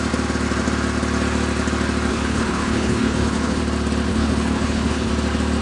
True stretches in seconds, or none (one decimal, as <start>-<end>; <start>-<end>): 0.0-2.1; 3.6-4.1; 5.1-5.6

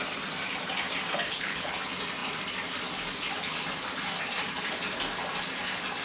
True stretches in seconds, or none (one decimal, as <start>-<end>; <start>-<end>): 0.0-1.3; 1.8-6.0

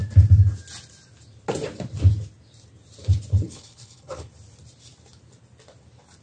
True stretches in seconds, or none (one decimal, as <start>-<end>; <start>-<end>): 0.0-3.3; 4.3-6.2